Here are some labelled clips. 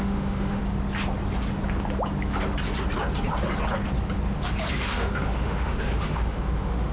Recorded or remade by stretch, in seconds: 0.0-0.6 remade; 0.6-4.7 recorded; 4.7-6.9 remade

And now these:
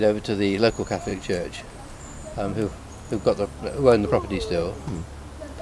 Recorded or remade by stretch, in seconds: 0.0-5.6 recorded

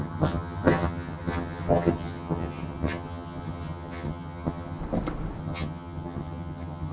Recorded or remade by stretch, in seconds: 0.0-4.8 remade; 4.8-5.4 recorded; 5.4-6.9 remade